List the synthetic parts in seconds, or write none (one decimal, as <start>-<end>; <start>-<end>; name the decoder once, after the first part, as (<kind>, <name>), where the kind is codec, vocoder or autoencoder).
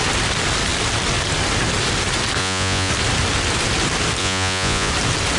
2.4-2.9 (vocoder, Vocos); 4.2-4.9